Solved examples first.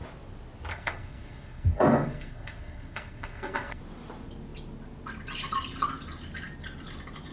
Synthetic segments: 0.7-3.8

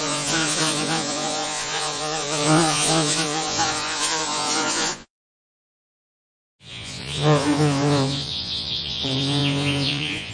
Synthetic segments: 0.0-10.3

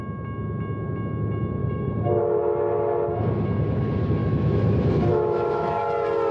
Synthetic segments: 1.6-2.2; 4.2-5.8

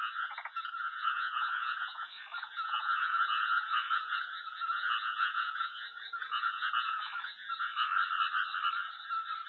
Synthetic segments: 0.0-7.9